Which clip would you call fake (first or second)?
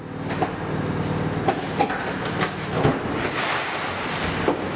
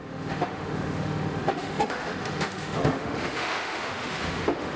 second